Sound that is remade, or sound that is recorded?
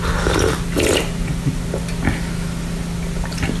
recorded